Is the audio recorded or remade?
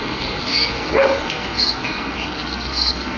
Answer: remade